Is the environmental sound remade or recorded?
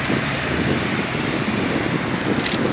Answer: recorded